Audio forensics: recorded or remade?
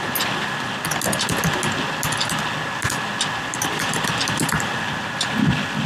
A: recorded